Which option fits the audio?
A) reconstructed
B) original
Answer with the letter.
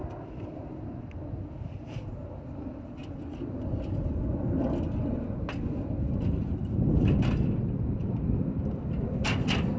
B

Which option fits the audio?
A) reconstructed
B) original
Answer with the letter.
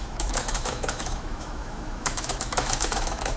A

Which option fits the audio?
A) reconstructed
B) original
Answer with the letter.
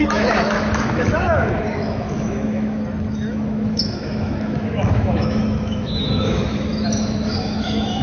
A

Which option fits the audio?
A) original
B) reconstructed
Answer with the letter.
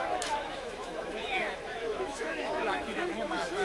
B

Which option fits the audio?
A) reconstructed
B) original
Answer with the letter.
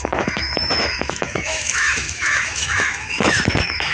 A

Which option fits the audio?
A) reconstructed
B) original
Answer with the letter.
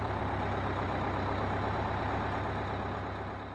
B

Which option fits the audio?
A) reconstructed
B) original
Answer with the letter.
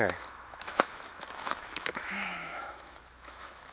A